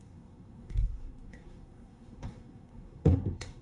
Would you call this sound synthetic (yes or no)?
yes